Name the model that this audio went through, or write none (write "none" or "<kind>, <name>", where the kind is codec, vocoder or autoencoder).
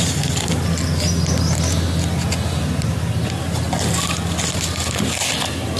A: none